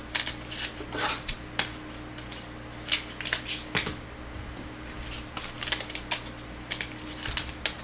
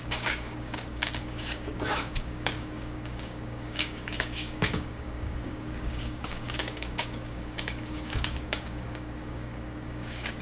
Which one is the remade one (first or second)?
second